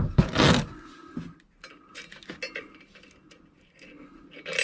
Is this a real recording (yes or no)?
yes